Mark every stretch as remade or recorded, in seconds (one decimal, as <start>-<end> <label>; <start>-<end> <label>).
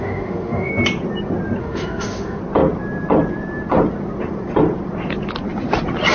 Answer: 0.0-0.7 remade; 0.7-1.6 recorded; 1.6-2.4 remade; 2.4-6.1 recorded